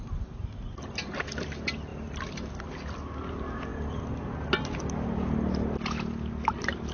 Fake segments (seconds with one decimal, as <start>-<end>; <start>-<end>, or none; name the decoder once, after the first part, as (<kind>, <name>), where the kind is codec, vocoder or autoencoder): none